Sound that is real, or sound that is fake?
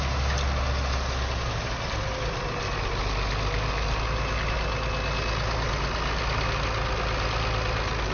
real